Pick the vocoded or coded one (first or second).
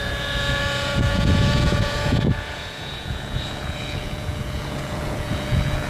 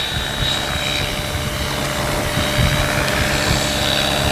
first